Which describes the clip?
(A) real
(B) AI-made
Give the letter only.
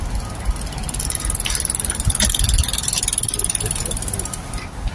A